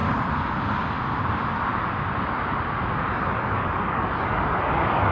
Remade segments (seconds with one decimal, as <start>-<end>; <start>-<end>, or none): 3.1-5.1